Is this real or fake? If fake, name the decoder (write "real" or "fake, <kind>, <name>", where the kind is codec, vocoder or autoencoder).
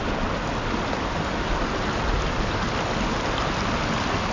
real